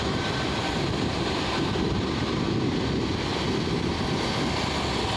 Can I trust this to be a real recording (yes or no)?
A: no